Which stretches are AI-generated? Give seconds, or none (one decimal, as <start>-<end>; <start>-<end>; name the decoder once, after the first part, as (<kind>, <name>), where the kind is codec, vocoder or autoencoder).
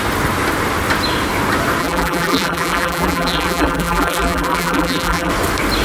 1.8-5.3 (vocoder, BigVGAN v2)